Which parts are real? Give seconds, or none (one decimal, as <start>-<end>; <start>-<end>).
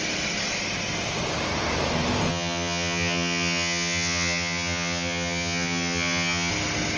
0.0-2.3; 6.5-7.0